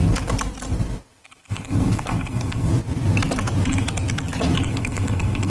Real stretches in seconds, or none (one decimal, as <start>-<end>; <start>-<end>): 0.0-1.5; 2.7-4.6